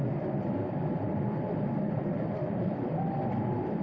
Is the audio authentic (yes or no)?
yes